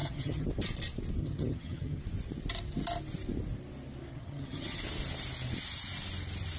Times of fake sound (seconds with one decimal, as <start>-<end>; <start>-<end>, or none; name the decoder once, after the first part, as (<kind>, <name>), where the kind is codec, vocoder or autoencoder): 0.0-0.5 (vocoder, HiFi-GAN); 1.2-2.0; 4.1-4.8